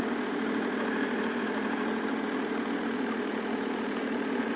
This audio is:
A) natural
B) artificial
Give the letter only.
B